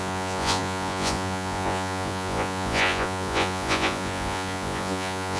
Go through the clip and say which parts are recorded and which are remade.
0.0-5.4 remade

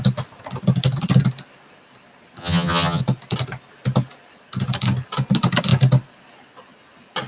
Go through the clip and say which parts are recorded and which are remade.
0.0-2.4 recorded; 2.4-3.0 remade; 3.0-7.3 recorded

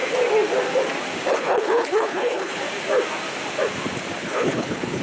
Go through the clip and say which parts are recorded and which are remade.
0.0-1.3 recorded; 1.3-2.6 remade; 2.6-4.2 recorded; 4.2-5.0 remade

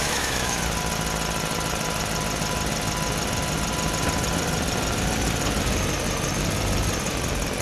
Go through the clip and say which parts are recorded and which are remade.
0.0-0.6 remade; 0.6-7.6 recorded

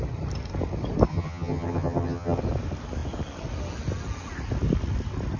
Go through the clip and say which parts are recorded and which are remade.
0.0-1.1 recorded; 1.1-2.4 remade; 2.4-5.4 recorded